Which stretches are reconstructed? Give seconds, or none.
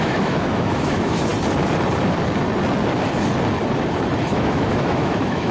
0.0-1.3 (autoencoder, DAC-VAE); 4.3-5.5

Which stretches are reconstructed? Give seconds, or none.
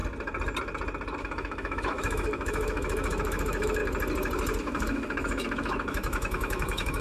1.2-3.8 (autoencoder, DAC-VAE); 4.6-7.0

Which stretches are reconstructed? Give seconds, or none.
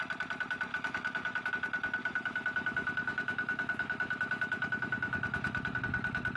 0.7-1.5 (autoencoder, DAC-VAE); 2.0-5.8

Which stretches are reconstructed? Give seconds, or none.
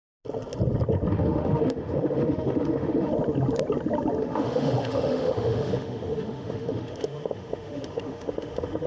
1.1-3.1 (autoencoder, DAC-VAE); 4.2-8.9